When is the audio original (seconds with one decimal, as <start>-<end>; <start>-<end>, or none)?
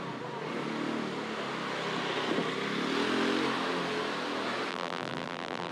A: 0.0-4.7